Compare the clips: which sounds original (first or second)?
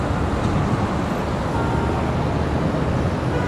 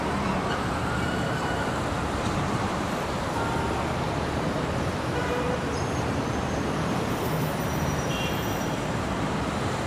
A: first